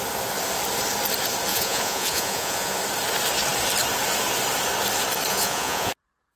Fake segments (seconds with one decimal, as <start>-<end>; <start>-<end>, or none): 1.5-2.8; 5.3-5.9